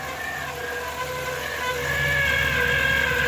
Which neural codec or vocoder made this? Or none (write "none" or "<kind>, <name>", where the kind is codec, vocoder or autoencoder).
none